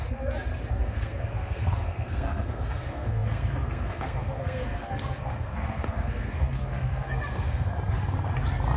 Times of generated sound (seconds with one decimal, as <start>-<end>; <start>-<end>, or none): 0.7-7.7